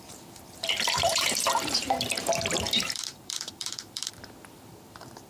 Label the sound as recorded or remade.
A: remade